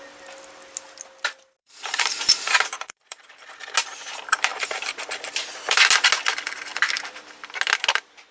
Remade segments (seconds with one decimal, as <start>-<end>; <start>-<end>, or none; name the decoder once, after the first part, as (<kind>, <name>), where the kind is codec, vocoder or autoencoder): 1.6-3.5 (vocoder, BigVGAN v2); 4.5-5.8